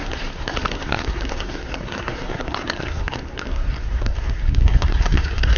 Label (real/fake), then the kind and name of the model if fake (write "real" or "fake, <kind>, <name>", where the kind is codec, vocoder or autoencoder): fake, codec, SNAC